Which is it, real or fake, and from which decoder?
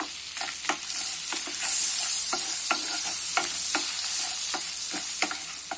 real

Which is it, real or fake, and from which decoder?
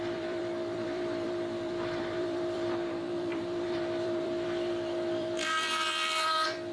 fake, vocoder, BigVGAN v2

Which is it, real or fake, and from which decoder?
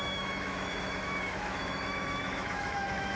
fake, autoencoder, DAC-VAE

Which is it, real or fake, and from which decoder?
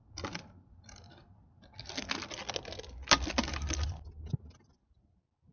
real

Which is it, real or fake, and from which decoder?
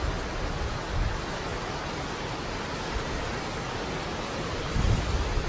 real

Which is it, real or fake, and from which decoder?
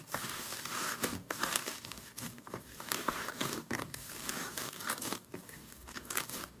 fake, codec, DAC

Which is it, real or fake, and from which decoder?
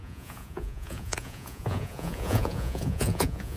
fake, vocoder, Vocos